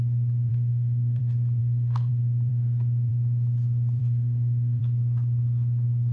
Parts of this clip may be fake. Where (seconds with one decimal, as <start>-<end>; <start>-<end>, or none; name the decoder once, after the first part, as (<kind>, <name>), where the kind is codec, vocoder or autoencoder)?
0.5-1.2 (codec, SNAC); 1.6-2.1; 4.0-4.8